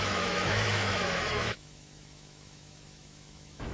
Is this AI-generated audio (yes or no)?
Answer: yes